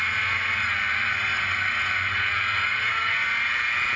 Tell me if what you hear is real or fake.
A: real